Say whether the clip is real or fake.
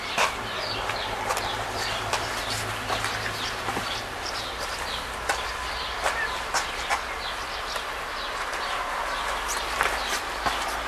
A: fake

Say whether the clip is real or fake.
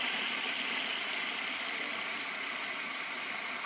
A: real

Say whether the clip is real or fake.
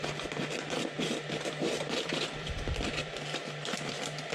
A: fake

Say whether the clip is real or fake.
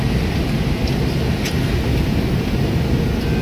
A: real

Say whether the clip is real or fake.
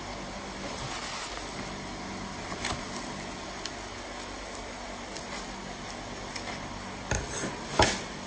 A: real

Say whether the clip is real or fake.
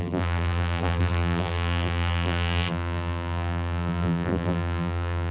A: fake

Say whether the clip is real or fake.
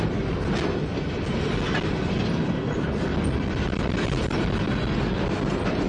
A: real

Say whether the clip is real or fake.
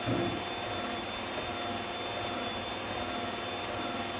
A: real